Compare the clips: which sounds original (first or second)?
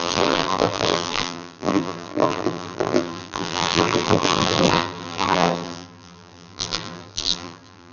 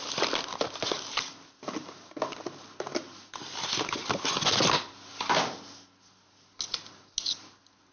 second